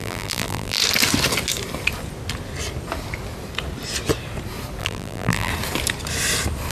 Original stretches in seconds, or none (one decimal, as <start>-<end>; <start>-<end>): 0.8-4.8; 5.5-6.7